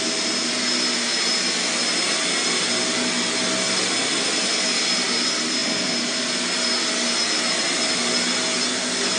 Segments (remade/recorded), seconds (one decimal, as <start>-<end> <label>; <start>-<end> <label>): 0.0-9.2 recorded